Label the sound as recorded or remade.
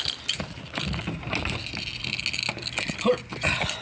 recorded